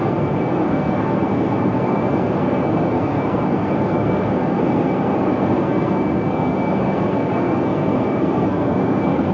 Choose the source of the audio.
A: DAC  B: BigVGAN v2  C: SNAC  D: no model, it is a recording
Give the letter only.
C